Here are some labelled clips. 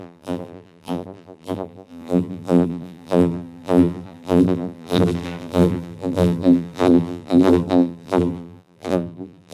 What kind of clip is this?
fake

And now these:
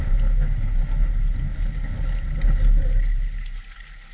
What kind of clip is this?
real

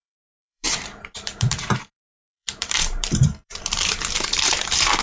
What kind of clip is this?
fake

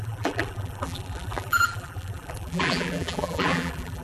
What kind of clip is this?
fake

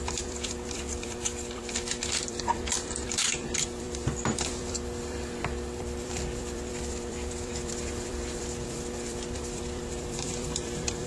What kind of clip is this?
fake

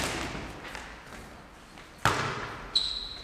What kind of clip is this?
real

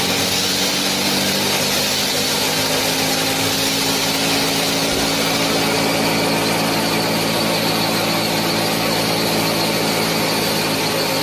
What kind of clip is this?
real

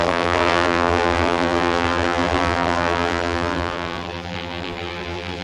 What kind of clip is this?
fake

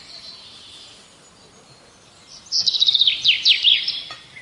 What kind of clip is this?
real